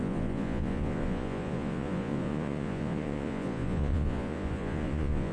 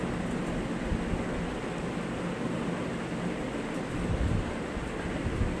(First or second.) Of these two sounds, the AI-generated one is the first